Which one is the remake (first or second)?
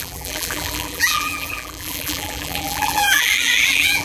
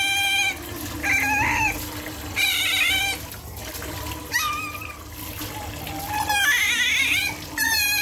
first